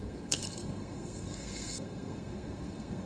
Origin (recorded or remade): remade